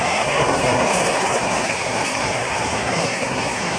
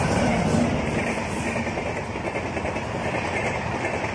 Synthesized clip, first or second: first